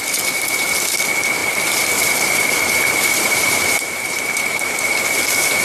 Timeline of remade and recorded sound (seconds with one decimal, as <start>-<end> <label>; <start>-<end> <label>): 0.0-1.4 recorded; 1.4-4.8 remade; 4.8-5.6 recorded